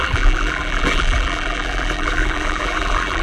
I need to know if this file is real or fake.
fake